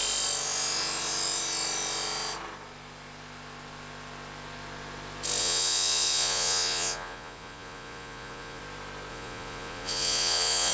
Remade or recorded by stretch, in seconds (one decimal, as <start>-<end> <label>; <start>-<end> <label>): 0.0-5.4 recorded; 5.4-8.6 remade; 8.6-9.1 recorded; 9.1-10.7 remade